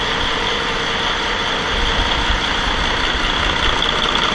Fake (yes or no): yes